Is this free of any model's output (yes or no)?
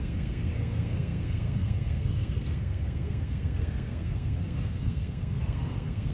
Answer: no